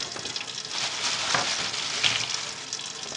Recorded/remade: recorded